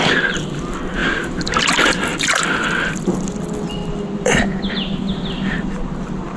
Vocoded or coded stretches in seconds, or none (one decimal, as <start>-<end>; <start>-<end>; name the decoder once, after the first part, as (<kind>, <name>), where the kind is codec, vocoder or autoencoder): none